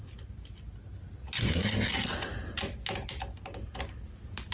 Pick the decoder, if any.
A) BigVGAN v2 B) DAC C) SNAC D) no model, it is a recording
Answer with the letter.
D